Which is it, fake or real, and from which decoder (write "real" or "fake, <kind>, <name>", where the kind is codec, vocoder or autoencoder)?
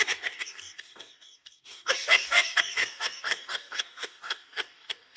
fake, codec, DAC